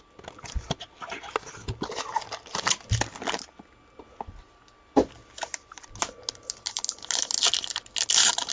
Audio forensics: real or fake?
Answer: real